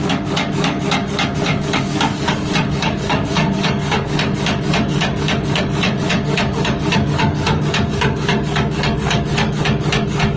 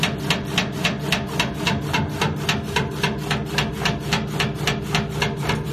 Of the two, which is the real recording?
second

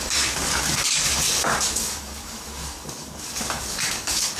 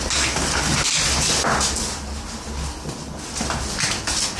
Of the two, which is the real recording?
second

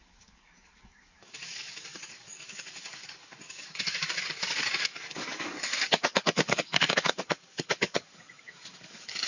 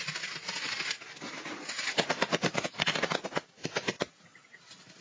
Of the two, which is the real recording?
second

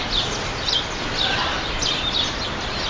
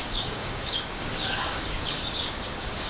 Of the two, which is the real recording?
first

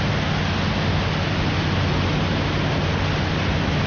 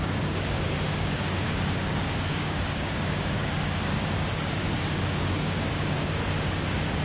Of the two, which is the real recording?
first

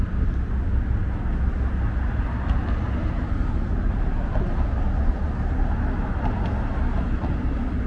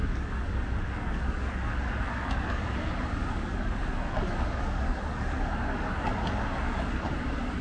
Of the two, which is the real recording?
first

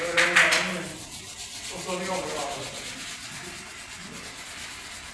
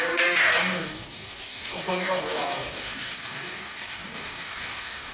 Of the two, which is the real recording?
first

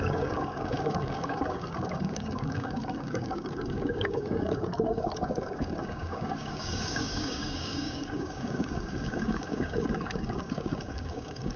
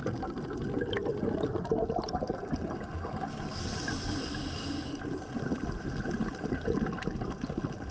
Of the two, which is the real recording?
second